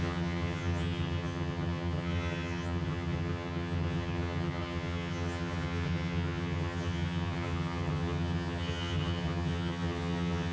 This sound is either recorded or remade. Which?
remade